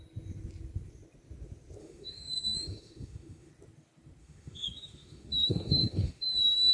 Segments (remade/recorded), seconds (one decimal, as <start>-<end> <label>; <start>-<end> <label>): 0.0-1.8 recorded; 1.8-3.5 remade; 3.5-4.2 recorded; 4.2-6.7 remade